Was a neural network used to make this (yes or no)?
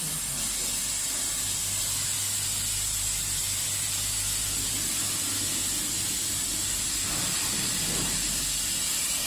no